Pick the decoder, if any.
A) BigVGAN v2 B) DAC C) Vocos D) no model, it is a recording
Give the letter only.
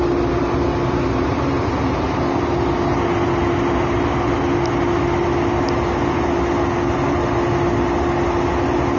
D